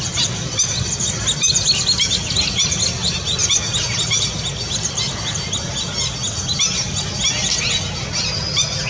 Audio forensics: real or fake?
real